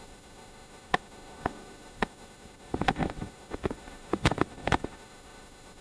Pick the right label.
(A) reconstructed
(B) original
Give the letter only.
A